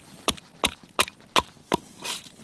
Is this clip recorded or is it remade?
recorded